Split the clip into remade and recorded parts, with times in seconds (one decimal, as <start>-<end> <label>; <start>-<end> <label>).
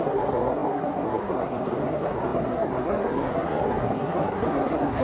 0.0-5.0 remade